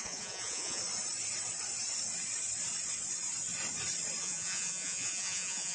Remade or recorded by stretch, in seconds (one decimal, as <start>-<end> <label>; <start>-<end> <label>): 0.0-0.8 remade; 0.8-4.2 recorded; 4.2-5.7 remade